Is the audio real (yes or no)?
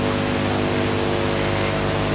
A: yes